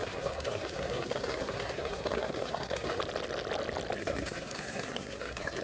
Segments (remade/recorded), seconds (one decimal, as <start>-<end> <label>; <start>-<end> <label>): 0.0-3.0 remade; 3.0-4.0 recorded; 4.0-5.6 remade